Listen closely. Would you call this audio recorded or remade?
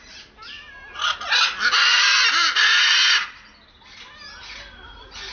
recorded